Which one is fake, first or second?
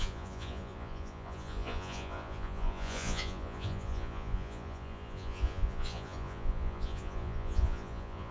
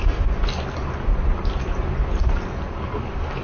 first